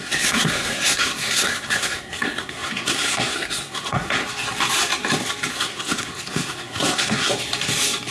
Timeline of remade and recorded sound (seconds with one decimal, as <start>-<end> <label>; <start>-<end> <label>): 0.0-4.2 remade; 4.2-5.5 recorded; 5.5-7.3 remade; 7.3-8.1 recorded